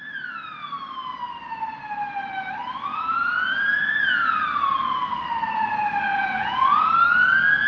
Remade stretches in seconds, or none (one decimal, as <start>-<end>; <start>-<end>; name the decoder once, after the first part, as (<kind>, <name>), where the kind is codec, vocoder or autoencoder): 2.9-4.4 (vocoder, Vocos); 6.1-6.9